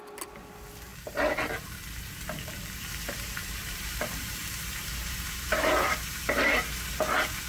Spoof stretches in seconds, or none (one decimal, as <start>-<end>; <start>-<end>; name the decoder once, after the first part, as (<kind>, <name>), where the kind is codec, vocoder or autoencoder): 3.6-6.9 (vocoder, BigVGAN v2)